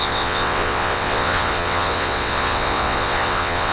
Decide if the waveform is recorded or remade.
remade